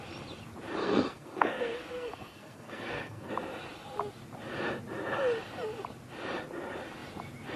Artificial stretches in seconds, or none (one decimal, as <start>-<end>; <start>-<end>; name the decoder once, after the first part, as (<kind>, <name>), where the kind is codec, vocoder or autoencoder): 0.8-3.3 (codec, SNAC)